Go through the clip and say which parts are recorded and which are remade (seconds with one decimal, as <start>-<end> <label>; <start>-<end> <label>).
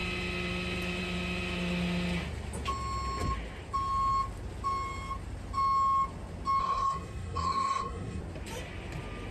0.0-6.6 recorded; 6.6-8.2 remade; 8.2-9.3 recorded